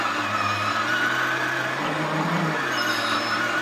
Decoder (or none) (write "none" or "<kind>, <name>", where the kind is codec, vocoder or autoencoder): none